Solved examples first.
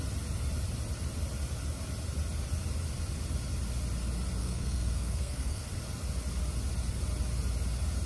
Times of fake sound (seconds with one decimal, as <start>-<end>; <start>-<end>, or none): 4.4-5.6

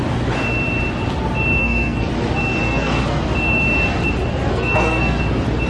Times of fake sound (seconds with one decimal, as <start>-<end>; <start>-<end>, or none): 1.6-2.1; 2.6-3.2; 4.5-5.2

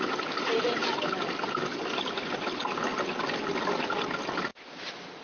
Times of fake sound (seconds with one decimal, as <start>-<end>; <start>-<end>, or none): none

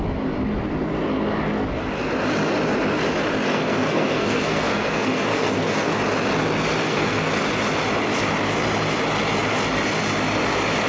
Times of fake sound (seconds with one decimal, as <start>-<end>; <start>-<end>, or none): 3.5-5.9; 6.8-7.4

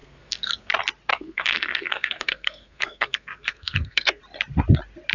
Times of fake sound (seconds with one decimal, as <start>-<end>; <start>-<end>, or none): 0.0-0.7; 1.1-4.2

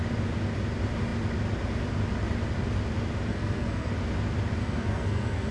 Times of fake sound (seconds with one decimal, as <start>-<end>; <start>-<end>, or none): 3.3-3.9; 4.6-5.5

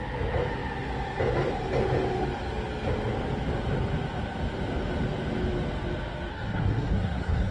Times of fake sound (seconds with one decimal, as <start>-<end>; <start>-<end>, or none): 6.3-7.5